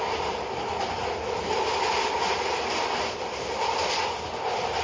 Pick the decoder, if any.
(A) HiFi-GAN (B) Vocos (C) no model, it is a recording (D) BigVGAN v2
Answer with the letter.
C